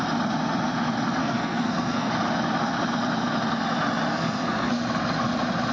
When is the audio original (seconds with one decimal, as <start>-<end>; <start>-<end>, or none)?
0.0-1.2; 2.1-4.1; 4.7-5.7